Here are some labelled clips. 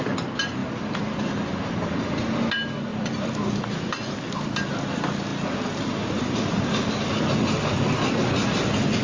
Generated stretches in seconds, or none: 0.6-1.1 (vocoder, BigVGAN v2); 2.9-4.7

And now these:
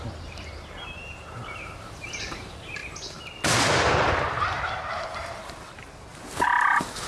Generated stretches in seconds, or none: 0.0-2.8 (vocoder, BigVGAN v2); 3.7-7.1

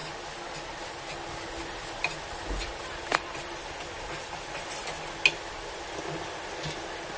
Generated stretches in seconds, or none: 3.1-3.8 (vocoder, BigVGAN v2)

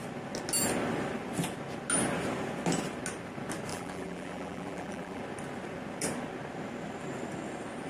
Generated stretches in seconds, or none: 3.7-5.2 (vocoder, BigVGAN v2)

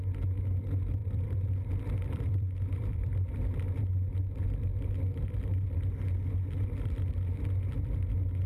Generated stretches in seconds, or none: 1.0-3.3 (vocoder, BigVGAN v2)

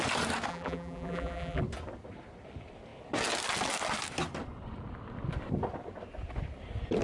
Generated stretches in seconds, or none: 0.5-1.6 (vocoder, BigVGAN v2)

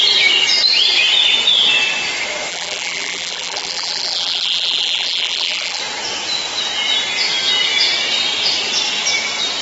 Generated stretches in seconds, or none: 2.5-5.8 (vocoder, BigVGAN v2)